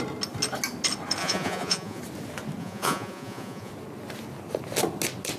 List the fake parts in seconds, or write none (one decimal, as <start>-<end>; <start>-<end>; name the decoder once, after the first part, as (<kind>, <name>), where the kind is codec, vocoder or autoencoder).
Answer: 1.2-2.0 (vocoder, Vocos); 2.6-3.7